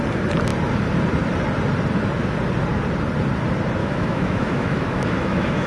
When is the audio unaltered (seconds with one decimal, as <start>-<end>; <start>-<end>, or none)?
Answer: 0.0-3.8